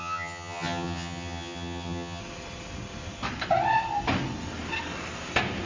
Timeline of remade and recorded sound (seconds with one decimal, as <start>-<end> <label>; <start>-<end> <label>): 0.0-2.2 remade; 2.2-5.7 recorded